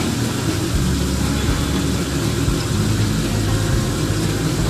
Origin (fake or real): real